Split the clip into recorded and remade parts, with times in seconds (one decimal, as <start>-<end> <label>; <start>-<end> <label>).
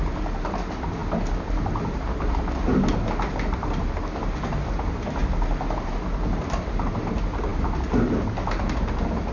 0.0-9.3 recorded